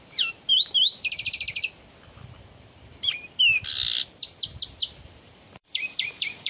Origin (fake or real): fake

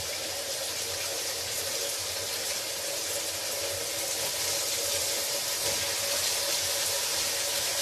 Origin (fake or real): real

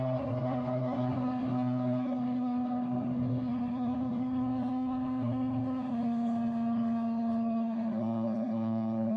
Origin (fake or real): fake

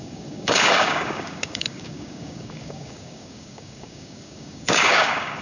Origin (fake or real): fake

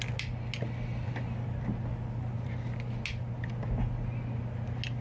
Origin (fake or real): real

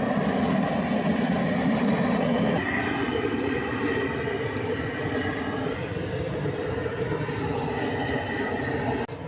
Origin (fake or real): real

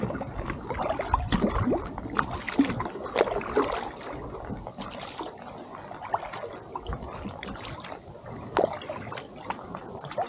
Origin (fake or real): real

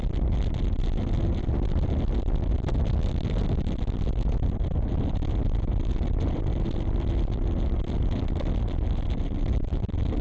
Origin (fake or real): real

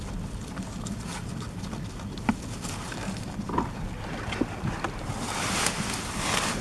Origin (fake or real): real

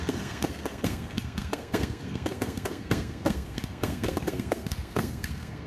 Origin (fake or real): fake